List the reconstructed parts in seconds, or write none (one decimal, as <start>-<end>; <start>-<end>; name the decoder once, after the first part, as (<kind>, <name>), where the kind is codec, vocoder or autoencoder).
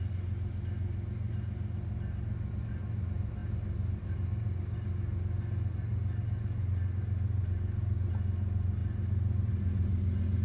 none